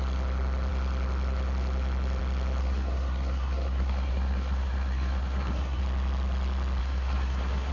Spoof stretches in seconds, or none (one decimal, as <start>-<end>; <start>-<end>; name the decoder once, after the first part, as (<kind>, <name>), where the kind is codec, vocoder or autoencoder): 2.6-5.8 (codec, SNAC); 6.8-7.7